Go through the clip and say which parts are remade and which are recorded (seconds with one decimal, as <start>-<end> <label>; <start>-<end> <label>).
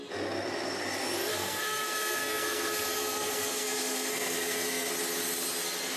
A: 0.0-1.3 recorded; 1.3-4.9 remade; 4.9-6.0 recorded